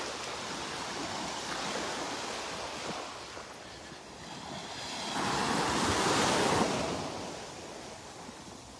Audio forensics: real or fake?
real